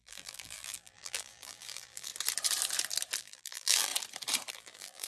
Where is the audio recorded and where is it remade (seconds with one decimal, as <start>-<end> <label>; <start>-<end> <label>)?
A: 0.0-2.1 remade; 2.1-3.2 recorded; 3.2-3.9 remade; 3.9-4.5 recorded; 4.5-5.1 remade